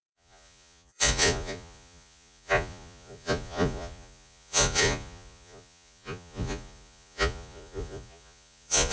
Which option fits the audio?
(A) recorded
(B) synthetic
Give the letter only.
B